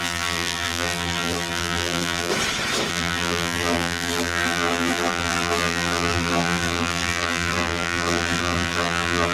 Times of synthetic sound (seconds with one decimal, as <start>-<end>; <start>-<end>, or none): 0.0-2.3; 2.9-9.3